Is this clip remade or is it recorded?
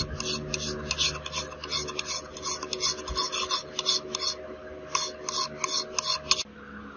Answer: recorded